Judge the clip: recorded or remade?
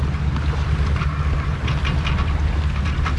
recorded